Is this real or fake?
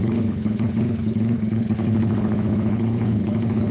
fake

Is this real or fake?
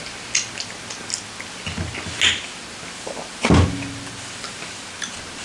real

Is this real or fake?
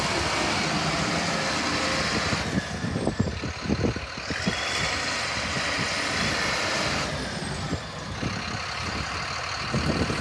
real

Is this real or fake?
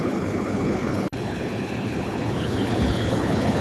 fake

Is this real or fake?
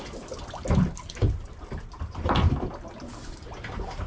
real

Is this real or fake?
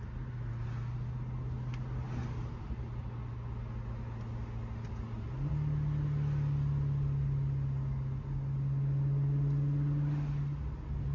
real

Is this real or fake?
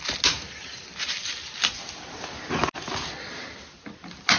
real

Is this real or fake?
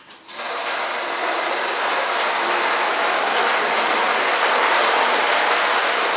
real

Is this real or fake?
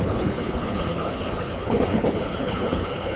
fake